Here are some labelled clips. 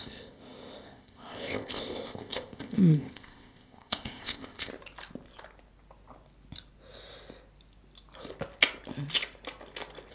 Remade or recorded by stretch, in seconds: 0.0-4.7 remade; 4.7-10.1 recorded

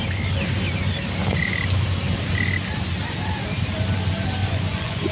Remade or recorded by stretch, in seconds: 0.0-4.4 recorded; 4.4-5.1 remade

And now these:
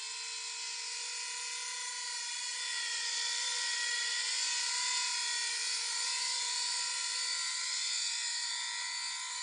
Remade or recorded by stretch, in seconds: 0.0-2.7 recorded; 2.7-4.7 remade; 4.7-5.4 recorded; 5.4-8.5 remade; 8.5-9.4 recorded

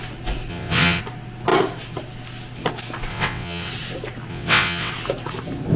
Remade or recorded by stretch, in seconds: 0.0-0.5 recorded; 0.5-1.0 remade; 1.0-3.1 recorded; 3.1-3.7 remade; 3.7-4.3 recorded; 4.3-4.9 remade; 4.9-5.8 recorded